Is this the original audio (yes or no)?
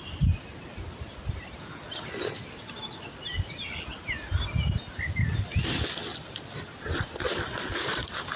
yes